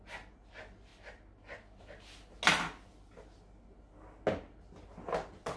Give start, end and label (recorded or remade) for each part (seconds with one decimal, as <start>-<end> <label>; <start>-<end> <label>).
0.0-5.6 recorded